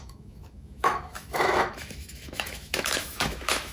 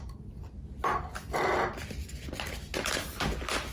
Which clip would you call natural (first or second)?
second